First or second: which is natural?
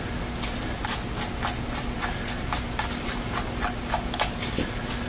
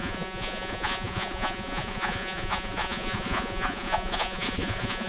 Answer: first